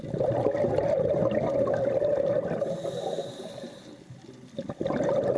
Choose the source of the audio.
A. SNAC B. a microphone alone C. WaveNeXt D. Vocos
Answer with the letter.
B